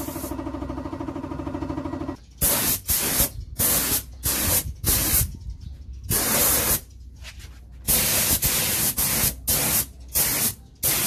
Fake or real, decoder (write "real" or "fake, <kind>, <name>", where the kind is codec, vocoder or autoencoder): real